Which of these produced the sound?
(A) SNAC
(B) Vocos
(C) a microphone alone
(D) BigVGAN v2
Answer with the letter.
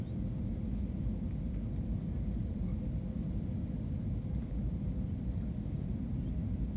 C